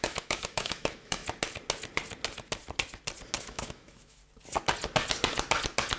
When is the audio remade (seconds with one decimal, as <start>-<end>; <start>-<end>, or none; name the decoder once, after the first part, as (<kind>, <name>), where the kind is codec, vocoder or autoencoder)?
0.0-1.2 (autoencoder, DAC-VAE); 3.4-4.2